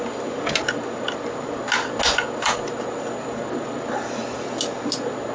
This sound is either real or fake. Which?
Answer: real